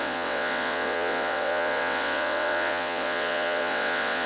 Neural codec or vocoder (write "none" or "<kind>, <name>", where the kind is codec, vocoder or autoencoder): vocoder, WaveNeXt